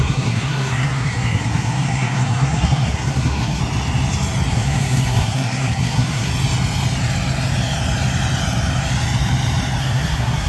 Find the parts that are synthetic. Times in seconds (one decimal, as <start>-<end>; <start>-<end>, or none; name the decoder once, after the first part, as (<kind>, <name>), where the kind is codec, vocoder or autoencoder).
0.0-3.6 (codec, SNAC); 4.5-6.3; 9.8-10.5